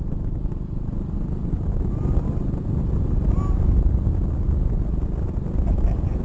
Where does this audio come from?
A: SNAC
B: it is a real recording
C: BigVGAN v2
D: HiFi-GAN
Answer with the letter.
B